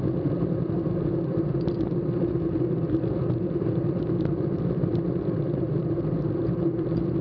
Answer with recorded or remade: remade